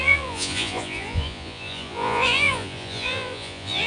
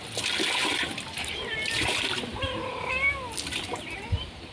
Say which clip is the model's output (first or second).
first